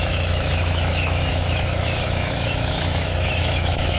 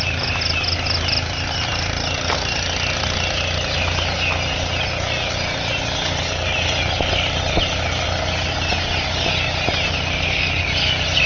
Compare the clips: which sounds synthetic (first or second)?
first